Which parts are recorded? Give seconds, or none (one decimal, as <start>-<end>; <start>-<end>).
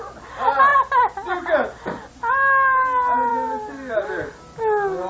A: 0.0-5.1